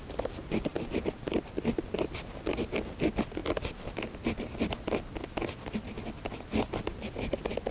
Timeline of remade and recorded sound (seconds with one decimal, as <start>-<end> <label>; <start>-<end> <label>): 0.0-7.7 recorded